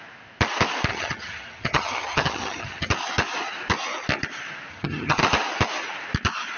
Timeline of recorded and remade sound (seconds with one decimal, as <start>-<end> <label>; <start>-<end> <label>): 0.0-0.9 recorded; 0.9-2.9 remade; 2.9-4.7 recorded; 4.7-5.2 remade; 5.2-6.6 recorded